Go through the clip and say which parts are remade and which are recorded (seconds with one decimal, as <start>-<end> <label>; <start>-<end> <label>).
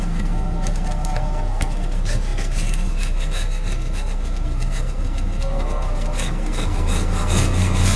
0.0-8.0 remade